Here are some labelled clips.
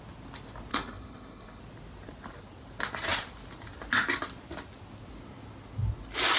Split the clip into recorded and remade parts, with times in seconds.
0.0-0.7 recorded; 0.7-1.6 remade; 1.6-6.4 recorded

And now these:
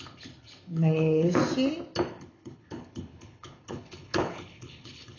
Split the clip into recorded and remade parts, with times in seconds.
0.0-1.4 remade; 1.4-2.1 recorded; 2.1-5.2 remade

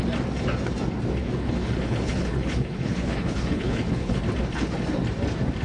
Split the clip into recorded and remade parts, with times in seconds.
0.0-1.2 recorded; 1.2-4.2 remade; 4.2-5.6 recorded

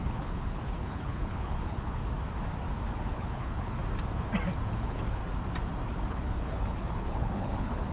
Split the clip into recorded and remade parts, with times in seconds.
0.0-2.0 remade; 2.0-3.0 recorded; 3.0-3.8 remade; 3.8-4.7 recorded; 4.7-5.2 remade; 5.2-6.1 recorded; 6.1-7.9 remade